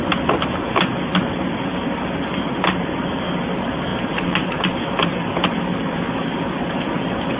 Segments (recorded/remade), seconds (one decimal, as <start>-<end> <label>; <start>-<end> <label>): 0.0-3.9 recorded; 3.9-4.9 remade; 4.9-7.4 recorded